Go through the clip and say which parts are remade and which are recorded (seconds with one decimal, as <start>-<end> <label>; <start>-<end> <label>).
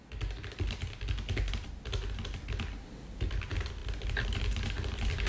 0.0-5.3 recorded